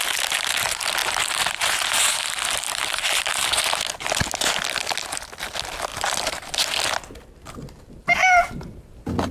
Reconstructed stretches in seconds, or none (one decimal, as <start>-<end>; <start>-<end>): none